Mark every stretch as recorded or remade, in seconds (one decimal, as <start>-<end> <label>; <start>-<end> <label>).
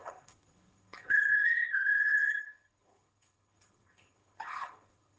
0.0-5.2 remade